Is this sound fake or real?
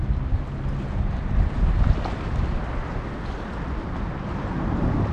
real